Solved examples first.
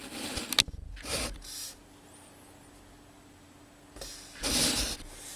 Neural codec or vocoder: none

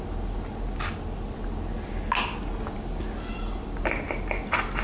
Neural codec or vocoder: none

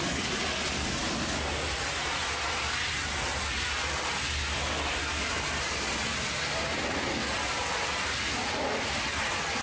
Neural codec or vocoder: none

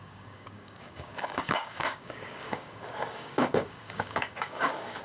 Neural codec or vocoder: codec, DAC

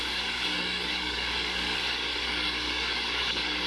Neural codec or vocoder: codec, DAC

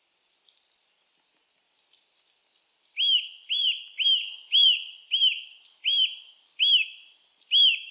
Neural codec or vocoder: none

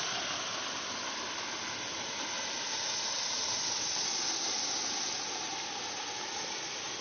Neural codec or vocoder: none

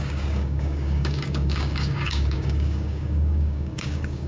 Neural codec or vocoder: codec, DAC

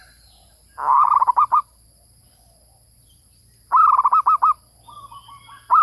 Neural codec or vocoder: none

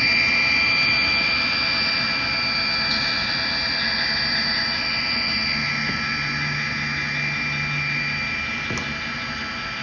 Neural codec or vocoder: none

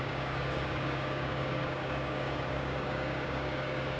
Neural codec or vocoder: codec, DAC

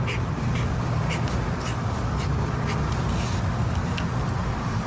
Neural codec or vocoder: none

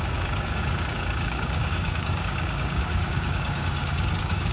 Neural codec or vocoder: codec, DAC